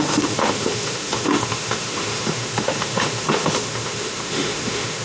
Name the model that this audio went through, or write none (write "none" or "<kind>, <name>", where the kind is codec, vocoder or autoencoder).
autoencoder, DAC-VAE